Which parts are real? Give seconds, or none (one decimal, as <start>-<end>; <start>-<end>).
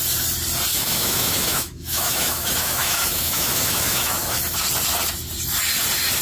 0.0-0.7; 4.4-6.2